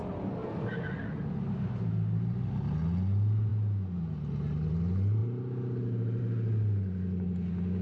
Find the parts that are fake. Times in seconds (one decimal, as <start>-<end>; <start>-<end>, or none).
none